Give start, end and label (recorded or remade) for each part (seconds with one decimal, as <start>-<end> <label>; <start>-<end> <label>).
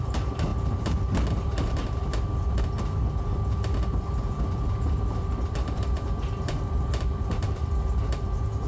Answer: 0.0-0.5 remade; 0.5-1.3 recorded; 1.3-2.0 remade; 2.0-5.5 recorded; 5.5-8.7 remade